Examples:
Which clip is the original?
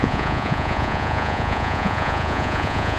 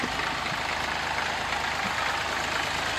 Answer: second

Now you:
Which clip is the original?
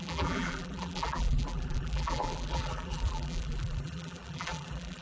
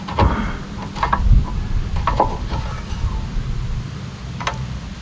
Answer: second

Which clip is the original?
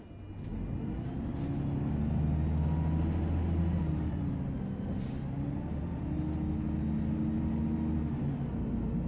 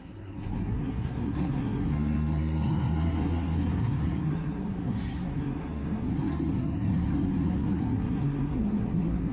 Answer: first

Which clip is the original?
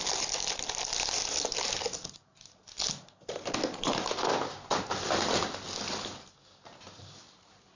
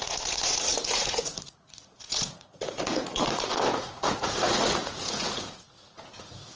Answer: first